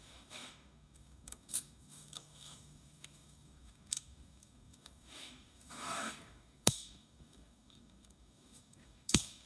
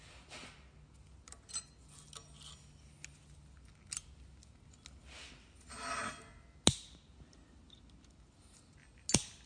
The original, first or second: second